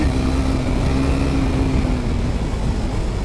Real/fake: real